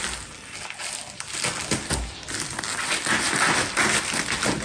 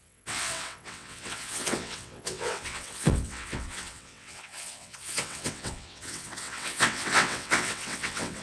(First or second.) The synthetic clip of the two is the second